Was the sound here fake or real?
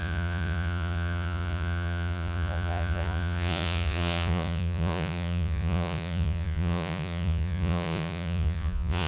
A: fake